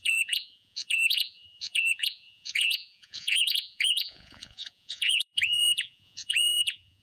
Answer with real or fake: fake